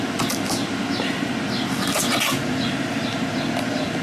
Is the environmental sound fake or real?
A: real